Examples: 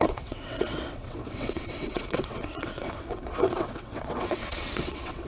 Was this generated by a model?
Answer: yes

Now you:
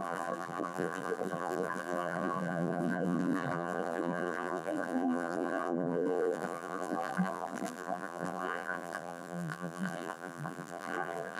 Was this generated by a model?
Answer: yes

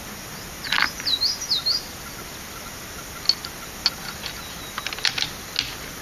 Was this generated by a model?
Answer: no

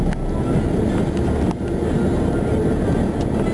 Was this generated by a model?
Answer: no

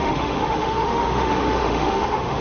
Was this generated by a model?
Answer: yes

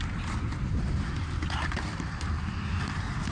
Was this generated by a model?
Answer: yes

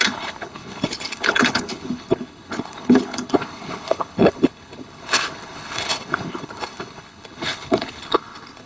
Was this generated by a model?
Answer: yes